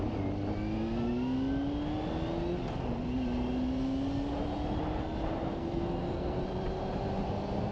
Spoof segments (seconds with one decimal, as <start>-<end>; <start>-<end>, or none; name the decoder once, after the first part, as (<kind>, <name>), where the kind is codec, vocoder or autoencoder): 5.5-6.4 (codec, SNAC)